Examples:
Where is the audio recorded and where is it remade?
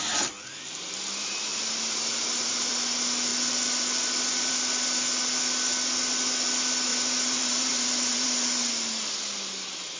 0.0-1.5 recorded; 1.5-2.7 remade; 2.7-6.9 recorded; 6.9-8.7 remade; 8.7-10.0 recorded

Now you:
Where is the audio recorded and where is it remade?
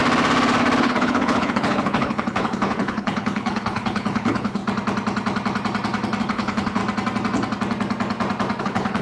0.0-0.8 recorded; 0.8-4.6 remade; 4.6-6.2 recorded; 6.2-6.8 remade; 6.8-8.6 recorded; 8.6-9.0 remade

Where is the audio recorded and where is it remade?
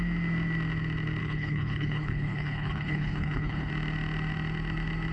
0.0-1.2 recorded; 1.2-3.7 remade; 3.7-5.1 recorded